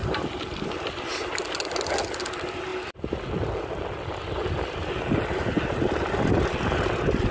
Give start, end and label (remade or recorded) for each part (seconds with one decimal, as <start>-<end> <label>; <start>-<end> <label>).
0.0-7.3 recorded